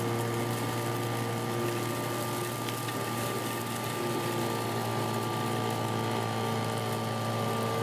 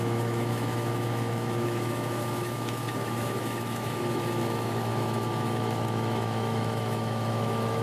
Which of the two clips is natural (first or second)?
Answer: first